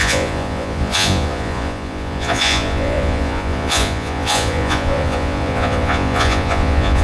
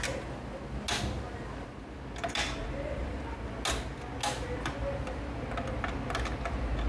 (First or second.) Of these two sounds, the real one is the second